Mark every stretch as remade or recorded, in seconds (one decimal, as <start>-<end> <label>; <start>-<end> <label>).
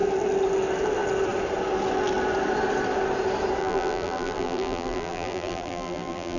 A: 0.0-3.6 recorded; 3.6-6.4 remade